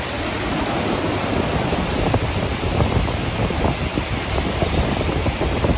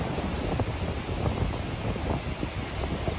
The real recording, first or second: second